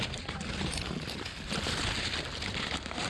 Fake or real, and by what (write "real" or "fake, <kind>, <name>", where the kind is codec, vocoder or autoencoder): real